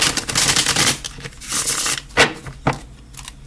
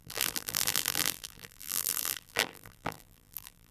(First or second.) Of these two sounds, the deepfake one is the second